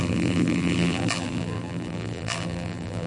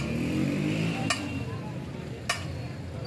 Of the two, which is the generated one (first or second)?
first